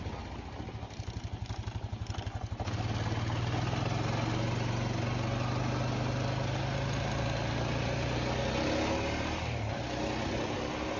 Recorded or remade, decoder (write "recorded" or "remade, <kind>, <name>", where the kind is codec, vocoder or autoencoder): recorded